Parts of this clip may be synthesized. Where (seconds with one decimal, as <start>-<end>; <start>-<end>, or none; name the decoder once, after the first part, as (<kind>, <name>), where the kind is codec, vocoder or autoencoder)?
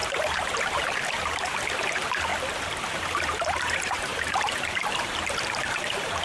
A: 0.0-2.3 (vocoder, BigVGAN v2); 3.0-6.2